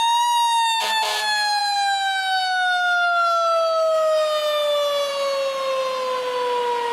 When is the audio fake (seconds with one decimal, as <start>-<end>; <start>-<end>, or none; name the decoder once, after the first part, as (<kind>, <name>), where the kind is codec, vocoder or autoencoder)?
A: none